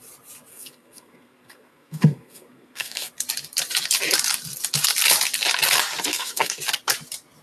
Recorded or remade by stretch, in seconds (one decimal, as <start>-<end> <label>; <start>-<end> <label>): 0.0-0.5 recorded; 0.5-3.1 remade; 3.1-6.1 recorded; 6.1-6.6 remade; 6.6-7.4 recorded